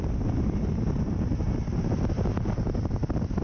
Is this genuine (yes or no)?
yes